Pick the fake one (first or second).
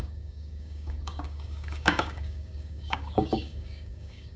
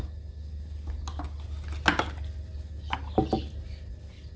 first